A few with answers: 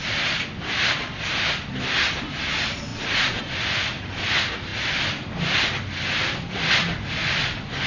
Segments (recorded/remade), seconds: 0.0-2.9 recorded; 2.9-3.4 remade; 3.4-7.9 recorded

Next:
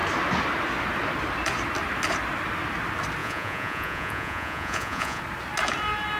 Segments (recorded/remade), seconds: 0.0-3.2 recorded; 3.2-5.2 remade; 5.2-6.2 recorded

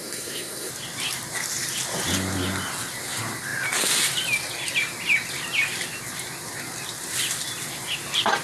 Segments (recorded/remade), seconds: 0.0-0.7 remade; 0.7-8.4 recorded